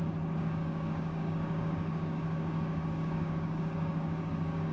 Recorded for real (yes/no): no